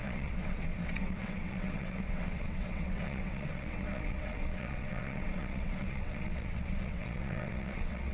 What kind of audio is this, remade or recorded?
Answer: remade